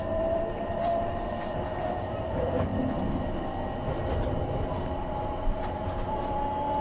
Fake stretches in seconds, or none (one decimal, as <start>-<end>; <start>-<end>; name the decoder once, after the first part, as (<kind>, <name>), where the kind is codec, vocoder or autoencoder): 0.0-2.7 (vocoder, BigVGAN v2); 4.2-6.8

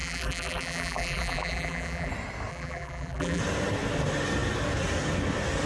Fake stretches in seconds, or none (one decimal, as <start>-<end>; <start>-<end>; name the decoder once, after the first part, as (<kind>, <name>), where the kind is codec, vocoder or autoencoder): 0.0-2.1 (vocoder, BigVGAN v2); 2.5-3.4